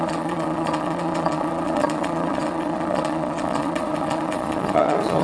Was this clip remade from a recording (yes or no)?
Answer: yes